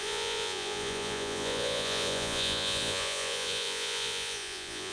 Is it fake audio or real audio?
fake